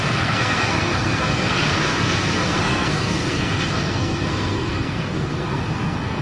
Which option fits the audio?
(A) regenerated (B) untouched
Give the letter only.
A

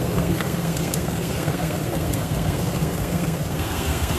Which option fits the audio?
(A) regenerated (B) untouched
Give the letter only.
A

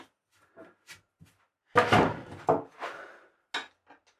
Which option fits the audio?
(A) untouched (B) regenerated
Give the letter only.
A